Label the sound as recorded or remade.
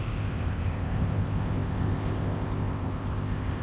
remade